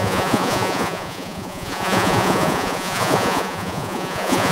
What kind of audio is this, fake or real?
fake